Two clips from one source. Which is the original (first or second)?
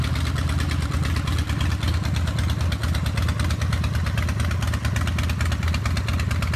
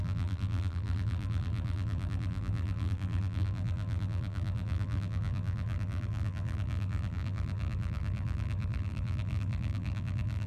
first